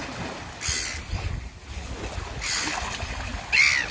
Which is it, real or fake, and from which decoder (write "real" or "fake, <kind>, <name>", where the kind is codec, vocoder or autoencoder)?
real